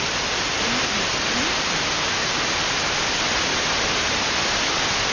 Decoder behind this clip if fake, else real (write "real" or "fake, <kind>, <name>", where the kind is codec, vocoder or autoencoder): real